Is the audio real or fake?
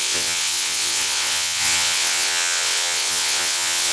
fake